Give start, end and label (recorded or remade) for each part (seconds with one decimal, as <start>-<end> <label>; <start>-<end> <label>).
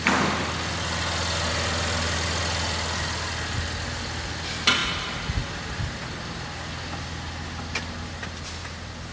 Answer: 0.0-9.1 recorded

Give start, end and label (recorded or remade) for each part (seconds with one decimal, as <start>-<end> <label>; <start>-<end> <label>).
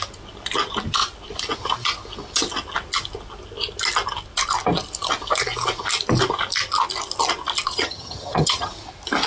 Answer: 0.0-7.7 recorded; 7.7-8.7 remade; 8.7-9.3 recorded